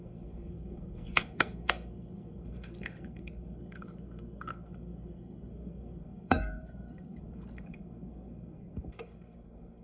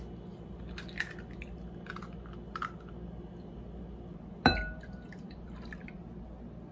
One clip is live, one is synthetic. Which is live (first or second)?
second